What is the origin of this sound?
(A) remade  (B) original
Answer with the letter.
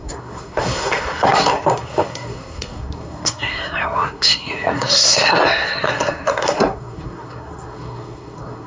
A